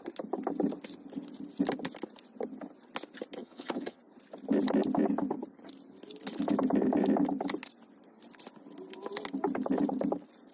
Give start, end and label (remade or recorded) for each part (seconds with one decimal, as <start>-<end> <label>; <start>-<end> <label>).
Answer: 0.0-3.4 recorded; 3.4-4.0 remade; 4.0-10.5 recorded